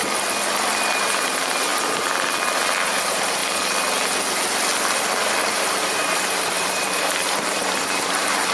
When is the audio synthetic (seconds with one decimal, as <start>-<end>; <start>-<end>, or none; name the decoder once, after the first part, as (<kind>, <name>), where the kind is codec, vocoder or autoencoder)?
1.0-1.7 (vocoder, BigVGAN v2); 3.0-3.4; 5.5-8.5